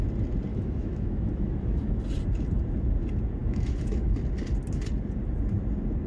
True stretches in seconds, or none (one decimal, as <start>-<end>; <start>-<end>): 0.0-0.5; 2.0-3.4; 4.1-6.1